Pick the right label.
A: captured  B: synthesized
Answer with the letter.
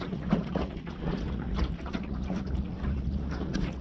B